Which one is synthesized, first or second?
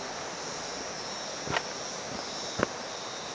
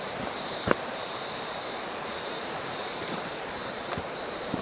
second